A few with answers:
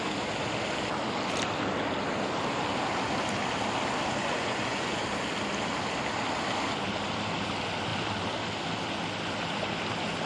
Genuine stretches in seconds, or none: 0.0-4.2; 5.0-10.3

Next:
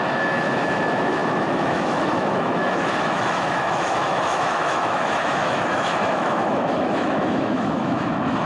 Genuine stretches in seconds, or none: none

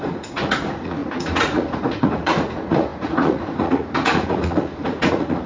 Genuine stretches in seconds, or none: none

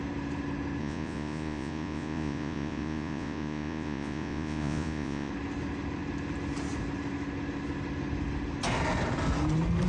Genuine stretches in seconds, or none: 0.0-0.8; 5.3-9.9

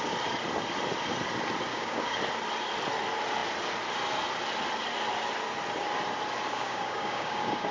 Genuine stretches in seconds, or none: 0.0-1.7; 2.2-6.5

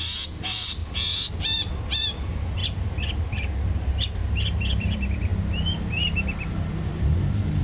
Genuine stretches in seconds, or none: 0.8-1.3; 4.2-4.8; 5.3-5.9

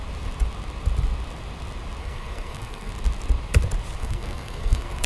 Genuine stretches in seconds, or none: 0.0-2.0; 2.9-4.0